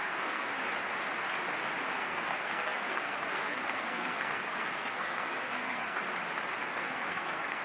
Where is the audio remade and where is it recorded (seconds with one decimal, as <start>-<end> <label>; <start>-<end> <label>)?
0.0-0.5 remade; 0.5-2.0 recorded; 2.0-6.0 remade; 6.0-6.6 recorded; 6.6-7.6 remade